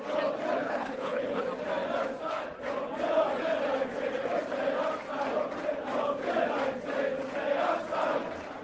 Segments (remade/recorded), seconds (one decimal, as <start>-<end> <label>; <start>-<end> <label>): 0.0-0.6 recorded; 0.6-1.4 remade; 1.4-8.6 recorded